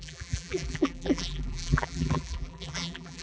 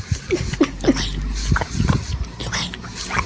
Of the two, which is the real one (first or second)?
second